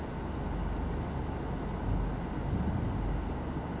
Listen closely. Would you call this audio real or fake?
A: real